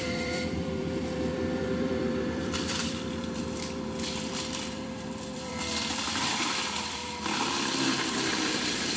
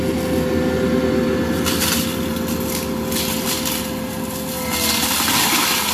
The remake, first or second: first